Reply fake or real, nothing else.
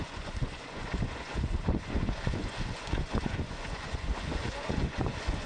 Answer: fake